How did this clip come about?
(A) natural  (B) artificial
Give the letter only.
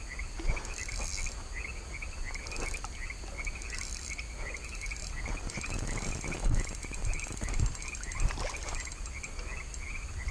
A